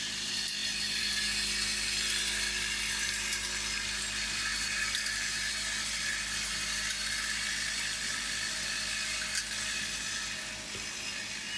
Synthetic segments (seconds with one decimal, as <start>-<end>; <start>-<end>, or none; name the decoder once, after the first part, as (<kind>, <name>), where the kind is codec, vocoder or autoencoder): 0.6-1.1 (vocoder, BigVGAN v2); 4.5-5.5